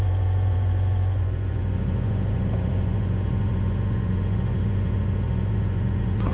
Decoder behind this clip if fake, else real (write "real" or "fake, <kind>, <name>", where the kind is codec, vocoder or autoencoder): fake, vocoder, Vocos